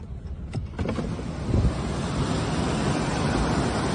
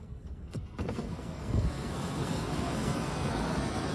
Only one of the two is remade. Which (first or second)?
second